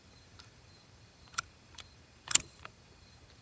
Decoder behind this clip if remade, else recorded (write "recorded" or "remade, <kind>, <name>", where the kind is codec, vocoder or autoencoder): remade, vocoder, BigVGAN v2